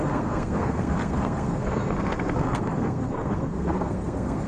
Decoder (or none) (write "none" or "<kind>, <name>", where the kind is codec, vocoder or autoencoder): codec, SNAC